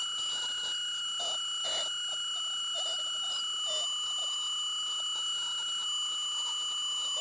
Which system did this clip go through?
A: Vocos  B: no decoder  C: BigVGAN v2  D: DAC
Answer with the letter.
B